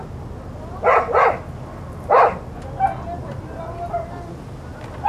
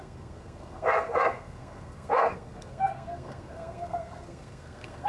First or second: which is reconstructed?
second